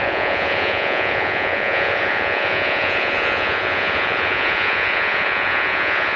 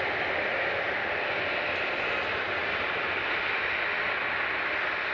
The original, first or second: second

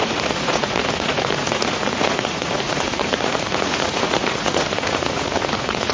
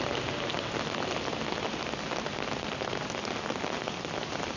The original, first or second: second